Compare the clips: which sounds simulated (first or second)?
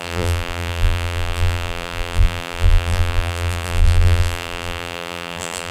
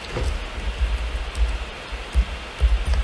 first